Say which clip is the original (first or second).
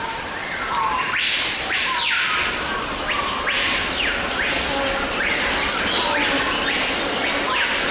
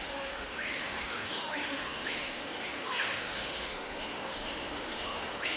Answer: first